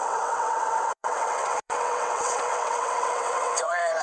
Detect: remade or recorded remade